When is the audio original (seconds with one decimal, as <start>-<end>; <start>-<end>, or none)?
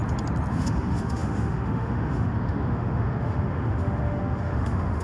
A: 0.0-0.5